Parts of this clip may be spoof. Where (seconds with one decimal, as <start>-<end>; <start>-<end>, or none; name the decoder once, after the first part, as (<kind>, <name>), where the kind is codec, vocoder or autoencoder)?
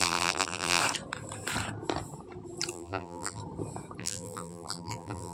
0.0-0.8 (vocoder, BigVGAN v2); 2.7-3.4; 4.0-5.3